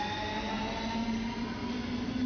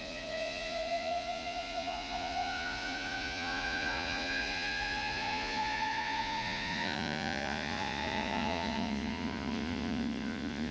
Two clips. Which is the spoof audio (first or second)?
second